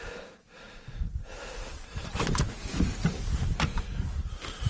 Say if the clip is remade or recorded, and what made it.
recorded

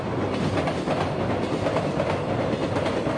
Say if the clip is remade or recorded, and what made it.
recorded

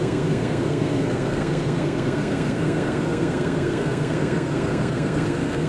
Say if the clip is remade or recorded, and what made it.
remade, codec, SNAC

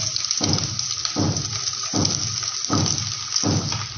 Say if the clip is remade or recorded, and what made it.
recorded